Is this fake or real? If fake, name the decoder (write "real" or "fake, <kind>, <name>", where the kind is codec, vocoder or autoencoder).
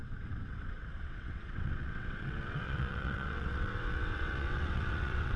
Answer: fake, vocoder, WaveNeXt